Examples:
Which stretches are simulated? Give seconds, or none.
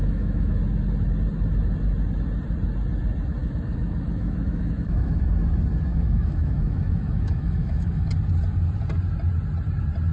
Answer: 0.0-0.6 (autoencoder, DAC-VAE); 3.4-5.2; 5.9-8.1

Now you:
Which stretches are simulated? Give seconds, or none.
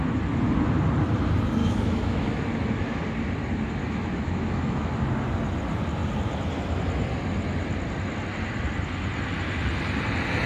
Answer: 1.6-3.0 (autoencoder, DAC-VAE); 3.8-4.9